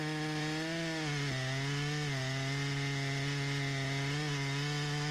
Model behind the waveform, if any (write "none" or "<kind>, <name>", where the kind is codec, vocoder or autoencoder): none